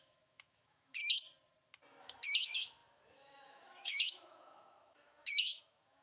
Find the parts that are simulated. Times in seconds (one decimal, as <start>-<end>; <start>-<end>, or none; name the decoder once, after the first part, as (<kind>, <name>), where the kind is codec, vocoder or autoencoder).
0.0-1.0 (autoencoder, DAC-VAE); 2.0-6.0